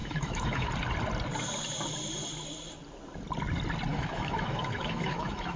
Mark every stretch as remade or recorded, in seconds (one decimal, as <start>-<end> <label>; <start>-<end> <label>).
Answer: 0.0-0.7 remade; 0.7-3.9 recorded; 3.9-5.6 remade